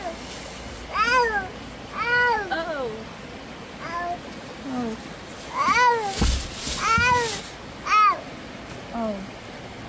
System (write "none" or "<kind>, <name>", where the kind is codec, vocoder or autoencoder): none